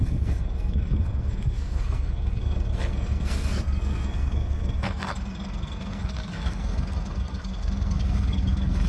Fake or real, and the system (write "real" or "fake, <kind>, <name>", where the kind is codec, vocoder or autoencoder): fake, codec, SNAC